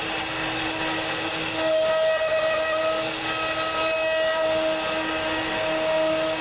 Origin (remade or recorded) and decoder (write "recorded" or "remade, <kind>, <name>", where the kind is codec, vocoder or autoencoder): recorded